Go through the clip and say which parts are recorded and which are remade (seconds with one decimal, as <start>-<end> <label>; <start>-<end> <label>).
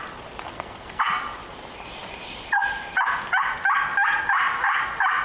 0.0-0.5 recorded; 0.5-1.0 remade; 1.0-5.2 recorded